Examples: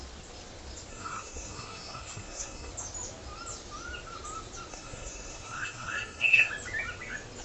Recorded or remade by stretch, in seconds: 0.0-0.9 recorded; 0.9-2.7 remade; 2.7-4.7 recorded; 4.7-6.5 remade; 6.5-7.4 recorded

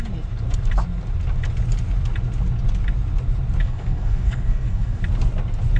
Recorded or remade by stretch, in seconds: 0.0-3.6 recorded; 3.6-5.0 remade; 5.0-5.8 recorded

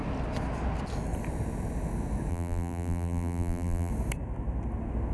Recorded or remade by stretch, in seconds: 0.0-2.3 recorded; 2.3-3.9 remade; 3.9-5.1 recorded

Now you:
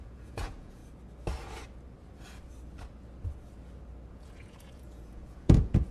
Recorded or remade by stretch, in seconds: 0.0-0.8 remade; 0.8-4.1 recorded; 4.1-5.9 remade